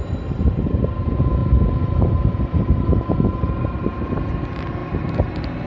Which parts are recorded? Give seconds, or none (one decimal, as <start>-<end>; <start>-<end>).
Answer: 1.4-2.0